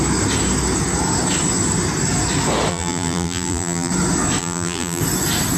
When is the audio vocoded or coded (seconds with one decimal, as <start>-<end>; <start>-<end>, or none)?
2.7-3.9; 4.4-5.0